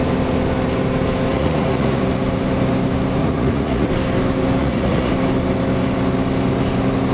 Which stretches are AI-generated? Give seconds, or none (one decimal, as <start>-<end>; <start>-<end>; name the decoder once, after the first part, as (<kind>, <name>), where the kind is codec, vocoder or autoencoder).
1.3-2.0 (vocoder, Vocos); 3.2-3.9; 4.6-5.1

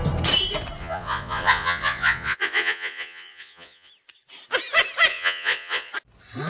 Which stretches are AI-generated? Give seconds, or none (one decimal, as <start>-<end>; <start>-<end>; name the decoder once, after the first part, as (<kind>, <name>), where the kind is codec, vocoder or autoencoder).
0.8-3.9 (vocoder, Vocos); 5.1-5.9

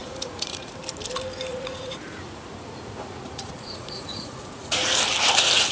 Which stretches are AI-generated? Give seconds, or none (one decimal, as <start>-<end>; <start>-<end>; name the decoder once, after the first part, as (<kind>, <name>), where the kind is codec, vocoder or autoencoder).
0.0-0.7 (vocoder, Vocos); 1.5-4.9

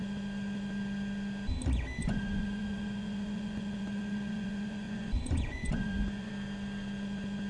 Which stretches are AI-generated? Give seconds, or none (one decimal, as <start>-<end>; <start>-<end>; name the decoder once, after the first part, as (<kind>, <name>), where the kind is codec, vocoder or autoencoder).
2.0-6.3 (vocoder, Vocos)

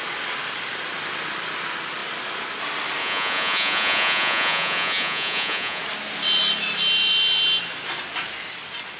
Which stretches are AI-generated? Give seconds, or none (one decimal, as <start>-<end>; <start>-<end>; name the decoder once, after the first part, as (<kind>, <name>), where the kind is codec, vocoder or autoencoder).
3.0-5.8 (vocoder, Vocos)

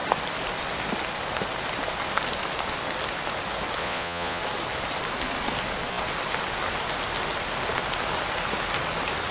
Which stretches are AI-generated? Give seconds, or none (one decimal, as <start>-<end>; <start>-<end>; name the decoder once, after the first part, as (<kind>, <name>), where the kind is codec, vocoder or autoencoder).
3.8-4.4 (vocoder, Vocos)